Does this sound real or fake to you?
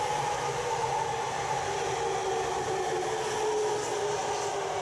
real